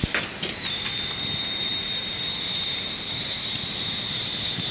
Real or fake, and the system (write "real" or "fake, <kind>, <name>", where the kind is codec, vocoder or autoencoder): real